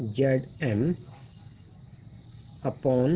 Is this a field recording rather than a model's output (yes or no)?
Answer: yes